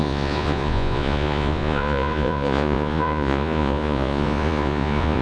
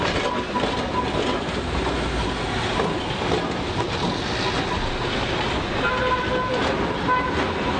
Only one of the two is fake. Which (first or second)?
first